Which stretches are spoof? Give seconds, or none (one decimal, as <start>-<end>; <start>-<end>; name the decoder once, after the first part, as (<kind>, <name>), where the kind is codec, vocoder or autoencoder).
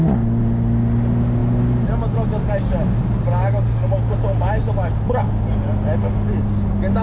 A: none